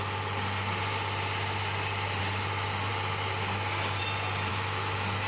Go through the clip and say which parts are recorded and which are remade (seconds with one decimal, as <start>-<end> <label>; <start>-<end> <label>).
0.0-4.5 recorded; 4.5-5.3 remade